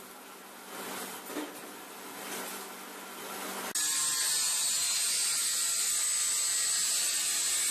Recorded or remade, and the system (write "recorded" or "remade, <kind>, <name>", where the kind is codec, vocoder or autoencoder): recorded